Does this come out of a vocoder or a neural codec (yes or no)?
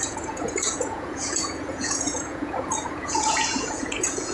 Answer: yes